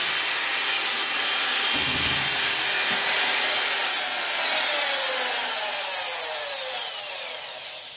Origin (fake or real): real